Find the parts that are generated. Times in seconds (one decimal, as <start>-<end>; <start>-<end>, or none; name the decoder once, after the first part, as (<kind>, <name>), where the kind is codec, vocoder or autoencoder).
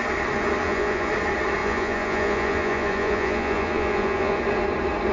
0.6-1.1 (vocoder, Vocos); 1.6-4.4